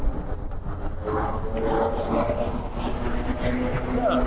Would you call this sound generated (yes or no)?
no